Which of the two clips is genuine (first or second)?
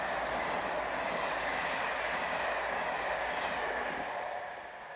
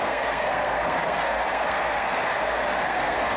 first